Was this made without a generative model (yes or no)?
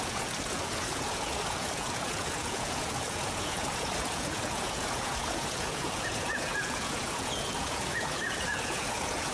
no